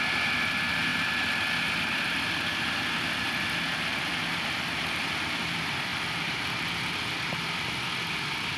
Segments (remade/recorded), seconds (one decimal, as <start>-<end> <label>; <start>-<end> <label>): 0.0-5.9 recorded; 5.9-6.4 remade; 6.4-8.6 recorded